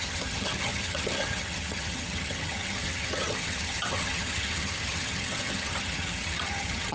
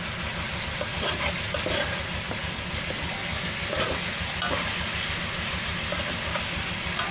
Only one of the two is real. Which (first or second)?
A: second